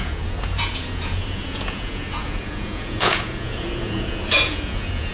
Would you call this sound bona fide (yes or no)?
no